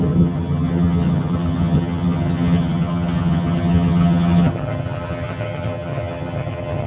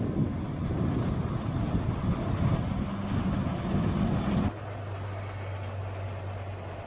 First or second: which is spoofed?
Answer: first